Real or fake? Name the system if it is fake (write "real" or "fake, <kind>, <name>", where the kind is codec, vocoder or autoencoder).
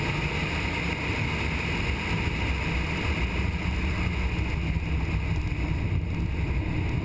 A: real